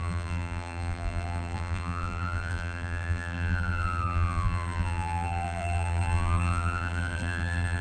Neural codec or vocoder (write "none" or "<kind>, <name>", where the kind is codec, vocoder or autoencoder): vocoder, BigVGAN v2